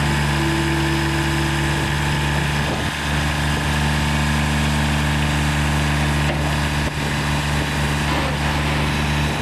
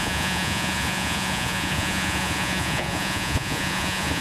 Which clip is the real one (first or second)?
first